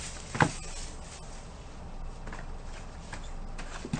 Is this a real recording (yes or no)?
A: yes